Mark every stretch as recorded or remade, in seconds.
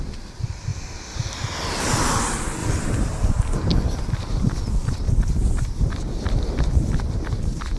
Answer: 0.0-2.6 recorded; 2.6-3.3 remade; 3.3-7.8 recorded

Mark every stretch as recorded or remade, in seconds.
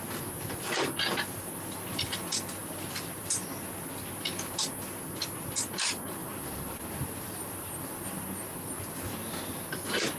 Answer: 0.0-2.6 recorded; 2.6-3.5 remade; 3.5-6.2 recorded; 6.2-8.7 remade; 8.7-10.2 recorded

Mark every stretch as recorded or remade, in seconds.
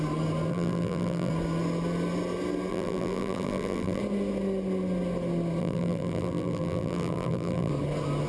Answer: 0.0-0.5 recorded; 0.5-1.3 remade; 1.3-2.7 recorded; 2.7-4.0 remade; 4.0-5.6 recorded; 5.6-7.7 remade; 7.7-8.3 recorded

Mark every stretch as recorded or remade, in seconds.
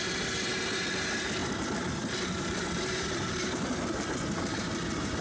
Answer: 0.0-5.2 recorded